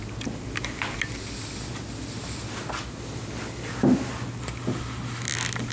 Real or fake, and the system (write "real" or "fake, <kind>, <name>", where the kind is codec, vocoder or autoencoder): real